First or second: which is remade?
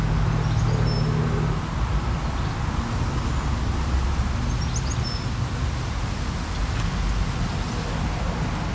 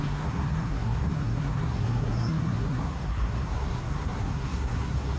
second